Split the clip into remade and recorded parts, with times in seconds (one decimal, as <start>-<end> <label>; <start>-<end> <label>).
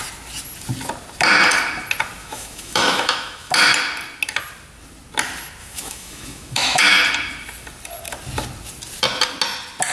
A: 0.0-2.2 recorded; 2.2-3.5 remade; 3.5-5.6 recorded; 5.6-6.8 remade; 6.8-9.9 recorded